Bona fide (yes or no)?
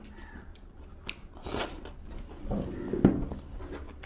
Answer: yes